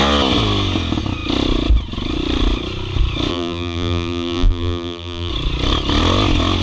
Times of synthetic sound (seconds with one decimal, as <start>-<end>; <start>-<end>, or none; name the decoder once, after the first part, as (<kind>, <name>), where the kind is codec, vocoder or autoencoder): 3.3-5.3 (vocoder, BigVGAN v2)